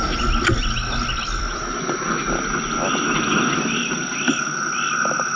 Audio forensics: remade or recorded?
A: recorded